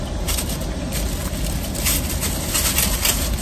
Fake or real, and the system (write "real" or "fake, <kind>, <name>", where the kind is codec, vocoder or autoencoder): real